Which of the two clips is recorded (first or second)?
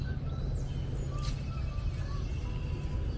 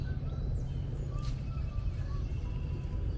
first